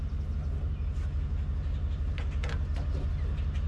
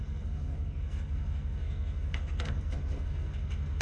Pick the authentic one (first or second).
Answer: first